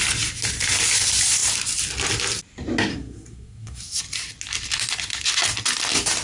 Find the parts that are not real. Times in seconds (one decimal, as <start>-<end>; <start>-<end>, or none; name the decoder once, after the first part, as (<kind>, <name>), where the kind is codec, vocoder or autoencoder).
2.9-4.0 (codec, SNAC)